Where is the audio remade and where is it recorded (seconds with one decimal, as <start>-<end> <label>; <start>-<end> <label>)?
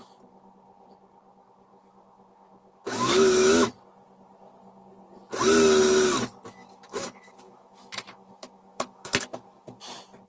0.0-1.7 recorded; 1.7-3.7 remade; 3.7-6.6 recorded; 6.6-9.8 remade; 9.8-10.3 recorded